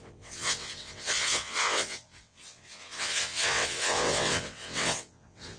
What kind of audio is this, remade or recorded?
remade